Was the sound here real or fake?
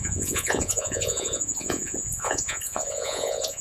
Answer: fake